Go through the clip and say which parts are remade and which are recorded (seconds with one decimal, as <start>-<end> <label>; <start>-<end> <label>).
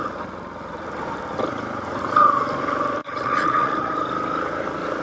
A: 0.0-3.0 recorded; 3.0-3.9 remade; 3.9-5.0 recorded